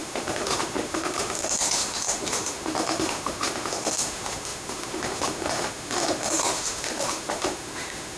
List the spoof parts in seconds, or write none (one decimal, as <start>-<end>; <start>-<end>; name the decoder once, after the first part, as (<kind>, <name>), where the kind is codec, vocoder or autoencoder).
0.0-8.2 (autoencoder, DAC-VAE)